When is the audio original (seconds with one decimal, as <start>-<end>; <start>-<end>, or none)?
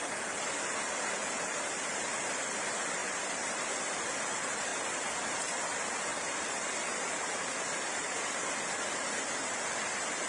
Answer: 0.0-3.0; 4.0-4.7; 5.6-10.3